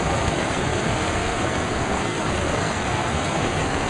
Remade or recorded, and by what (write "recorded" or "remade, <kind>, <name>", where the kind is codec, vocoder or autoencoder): remade, codec, SNAC